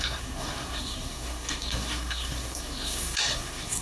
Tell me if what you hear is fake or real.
fake